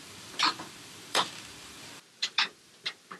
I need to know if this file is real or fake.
fake